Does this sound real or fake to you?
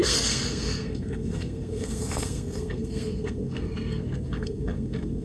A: fake